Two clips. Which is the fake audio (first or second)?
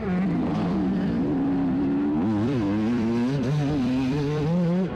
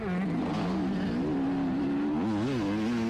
first